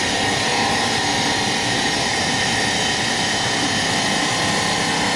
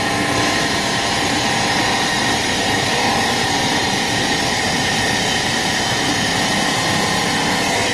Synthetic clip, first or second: second